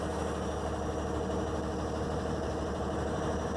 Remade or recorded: recorded